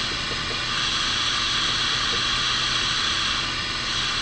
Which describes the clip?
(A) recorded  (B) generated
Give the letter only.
A